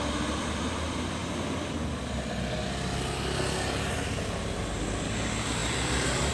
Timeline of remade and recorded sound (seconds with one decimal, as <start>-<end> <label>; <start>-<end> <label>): 0.0-1.2 remade; 1.2-5.0 recorded; 5.0-6.3 remade